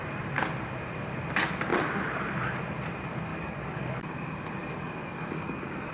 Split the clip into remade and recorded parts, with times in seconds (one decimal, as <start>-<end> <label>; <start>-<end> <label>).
0.0-3.3 recorded; 3.3-3.9 remade; 3.9-4.6 recorded; 4.6-5.9 remade